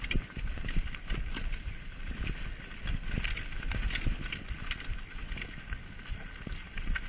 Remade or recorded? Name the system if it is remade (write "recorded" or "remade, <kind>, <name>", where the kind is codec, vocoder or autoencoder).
recorded